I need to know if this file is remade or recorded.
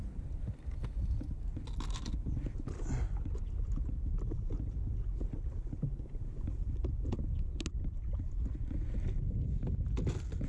recorded